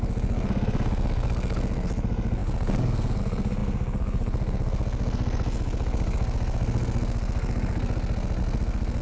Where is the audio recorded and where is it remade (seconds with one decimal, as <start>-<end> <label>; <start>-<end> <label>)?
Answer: 0.0-9.0 remade